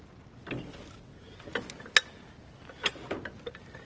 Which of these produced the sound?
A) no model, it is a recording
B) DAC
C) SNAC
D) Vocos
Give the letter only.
A